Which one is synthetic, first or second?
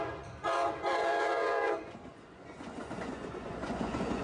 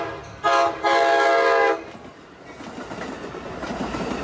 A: first